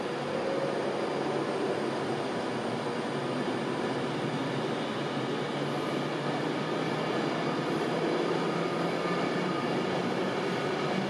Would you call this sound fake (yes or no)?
no